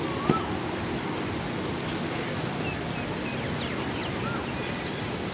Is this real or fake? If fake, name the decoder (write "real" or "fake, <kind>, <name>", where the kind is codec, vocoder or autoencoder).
real